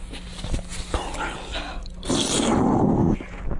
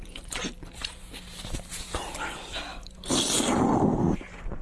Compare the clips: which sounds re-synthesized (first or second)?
second